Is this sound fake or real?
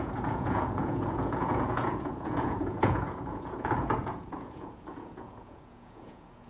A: fake